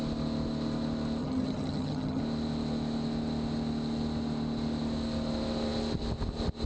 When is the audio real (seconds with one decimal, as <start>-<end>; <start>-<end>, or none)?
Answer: 0.0-1.2; 2.2-6.7